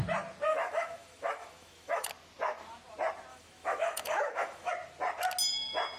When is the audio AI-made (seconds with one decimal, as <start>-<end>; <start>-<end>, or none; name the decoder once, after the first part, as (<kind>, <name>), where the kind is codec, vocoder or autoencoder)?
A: 0.5-2.1 (autoencoder, DAC-VAE); 3.3-4.7